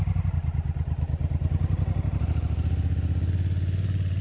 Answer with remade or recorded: recorded